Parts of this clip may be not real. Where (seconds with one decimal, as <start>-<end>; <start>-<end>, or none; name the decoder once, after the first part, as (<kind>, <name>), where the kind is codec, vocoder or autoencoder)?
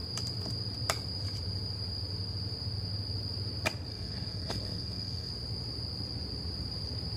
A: 3.9-5.3 (codec, SNAC)